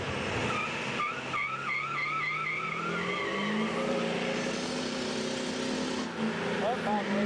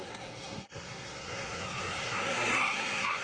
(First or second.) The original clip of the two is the first